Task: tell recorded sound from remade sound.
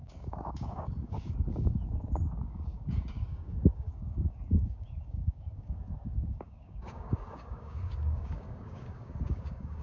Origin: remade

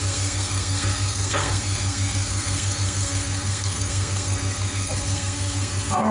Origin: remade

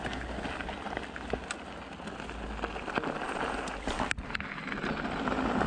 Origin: recorded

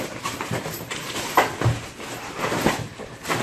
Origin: remade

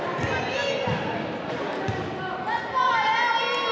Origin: recorded